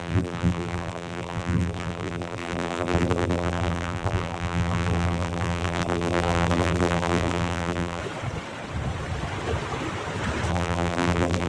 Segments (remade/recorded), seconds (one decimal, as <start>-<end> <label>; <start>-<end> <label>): 0.0-8.0 remade; 8.0-10.5 recorded; 10.5-11.5 remade